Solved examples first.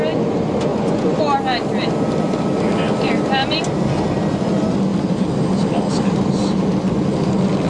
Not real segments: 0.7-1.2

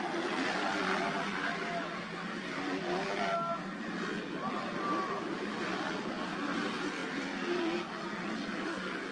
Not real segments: none

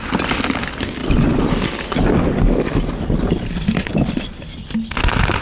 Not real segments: none